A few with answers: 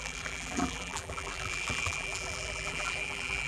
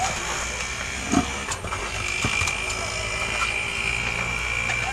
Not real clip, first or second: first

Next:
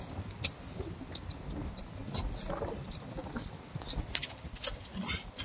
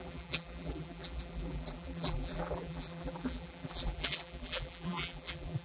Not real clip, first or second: second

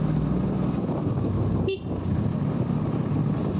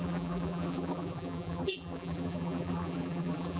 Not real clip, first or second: second